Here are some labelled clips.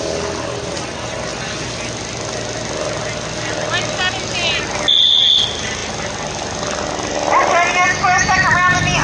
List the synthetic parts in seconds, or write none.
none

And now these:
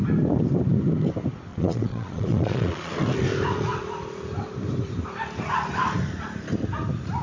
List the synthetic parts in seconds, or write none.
1.5-2.9 (vocoder, Vocos)